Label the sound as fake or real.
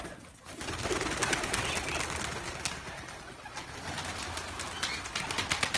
real